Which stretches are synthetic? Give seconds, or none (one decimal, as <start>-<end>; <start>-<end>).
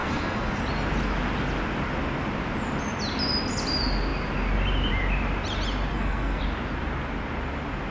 0.0-0.6; 5.9-6.4